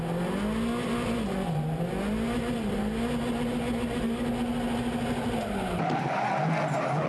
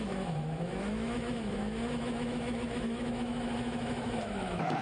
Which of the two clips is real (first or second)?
first